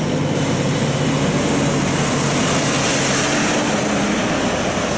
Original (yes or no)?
yes